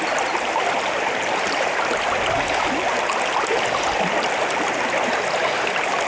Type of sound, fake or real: real